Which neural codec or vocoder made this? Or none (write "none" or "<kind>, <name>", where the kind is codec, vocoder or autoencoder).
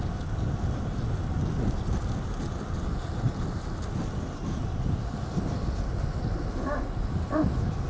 none